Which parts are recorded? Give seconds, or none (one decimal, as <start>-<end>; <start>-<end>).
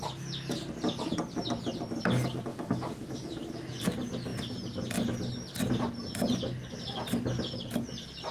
0.0-2.5; 3.8-8.3